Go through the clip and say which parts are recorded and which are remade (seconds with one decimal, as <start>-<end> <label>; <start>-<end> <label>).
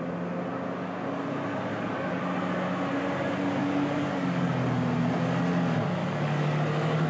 0.0-1.7 recorded; 1.7-2.2 remade; 2.2-3.6 recorded; 3.6-4.5 remade; 4.5-6.0 recorded; 6.0-7.1 remade